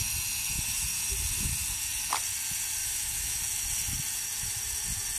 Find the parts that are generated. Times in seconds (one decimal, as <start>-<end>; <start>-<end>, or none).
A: 2.8-3.4